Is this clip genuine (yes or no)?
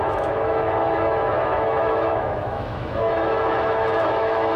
no